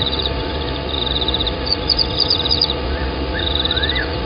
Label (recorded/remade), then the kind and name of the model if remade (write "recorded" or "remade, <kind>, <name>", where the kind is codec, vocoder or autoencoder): remade, vocoder, Vocos